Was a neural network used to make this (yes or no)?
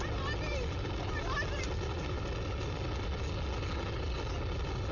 no